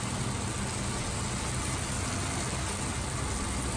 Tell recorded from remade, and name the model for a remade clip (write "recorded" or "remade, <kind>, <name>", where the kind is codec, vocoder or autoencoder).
recorded